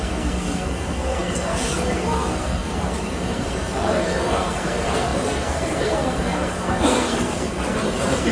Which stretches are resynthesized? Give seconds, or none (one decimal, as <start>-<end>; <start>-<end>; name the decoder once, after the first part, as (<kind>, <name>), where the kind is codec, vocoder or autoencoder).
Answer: 0.0-8.3 (codec, SNAC)